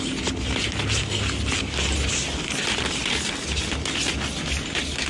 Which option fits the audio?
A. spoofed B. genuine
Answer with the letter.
B